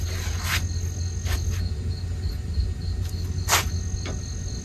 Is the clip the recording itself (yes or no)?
yes